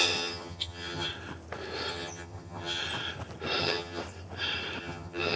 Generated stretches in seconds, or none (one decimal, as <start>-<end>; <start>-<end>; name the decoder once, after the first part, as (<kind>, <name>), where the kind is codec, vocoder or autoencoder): 0.0-1.1 (vocoder, HiFi-GAN); 1.9-2.8; 3.6-4.0; 4.8-5.4